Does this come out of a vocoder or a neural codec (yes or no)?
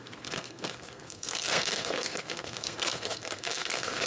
yes